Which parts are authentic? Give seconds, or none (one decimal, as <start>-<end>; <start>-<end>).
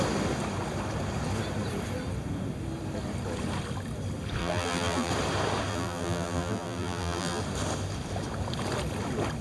0.0-4.4; 5.1-5.7; 7.4-9.4